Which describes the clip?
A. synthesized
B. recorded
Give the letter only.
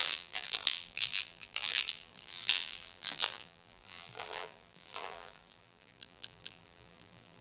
A